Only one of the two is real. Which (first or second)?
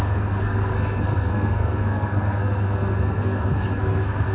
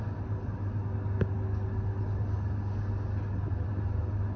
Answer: second